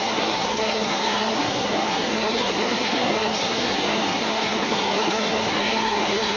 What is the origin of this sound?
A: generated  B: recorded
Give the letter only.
A